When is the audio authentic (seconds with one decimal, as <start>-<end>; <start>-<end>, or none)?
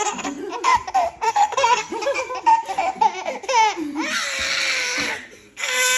0.4-1.3; 1.9-5.5